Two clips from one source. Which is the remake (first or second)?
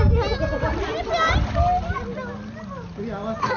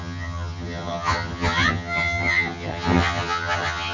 second